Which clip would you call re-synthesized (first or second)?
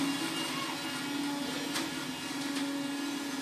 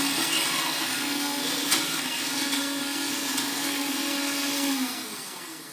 second